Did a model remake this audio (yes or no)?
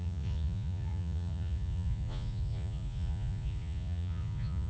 yes